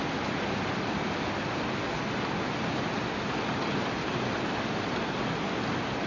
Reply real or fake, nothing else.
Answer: real